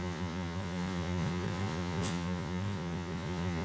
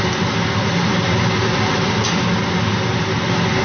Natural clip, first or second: second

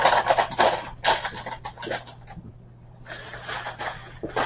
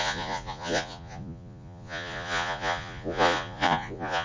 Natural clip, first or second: first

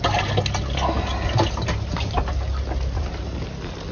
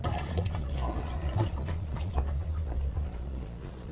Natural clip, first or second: first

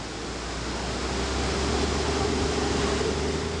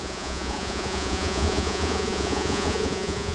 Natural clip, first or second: first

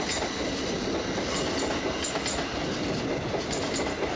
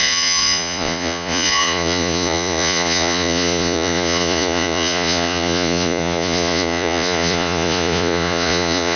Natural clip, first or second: first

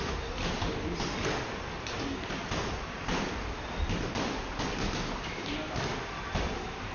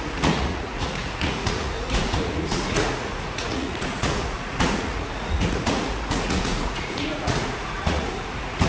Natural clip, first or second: first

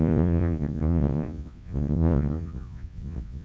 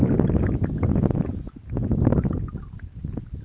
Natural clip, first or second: second